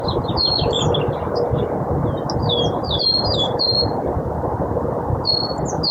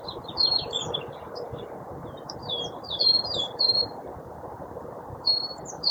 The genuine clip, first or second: first